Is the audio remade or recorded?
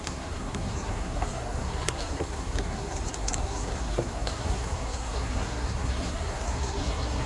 remade